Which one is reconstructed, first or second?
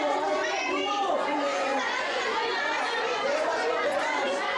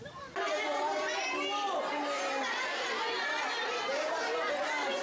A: first